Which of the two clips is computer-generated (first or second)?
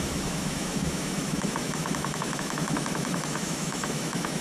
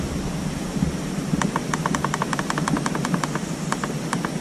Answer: first